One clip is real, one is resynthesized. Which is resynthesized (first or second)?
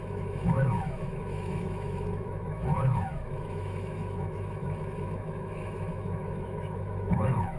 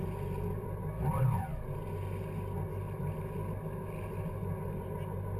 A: first